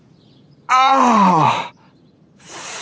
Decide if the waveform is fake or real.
fake